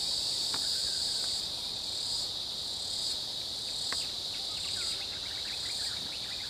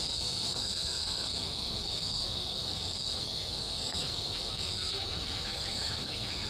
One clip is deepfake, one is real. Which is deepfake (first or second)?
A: second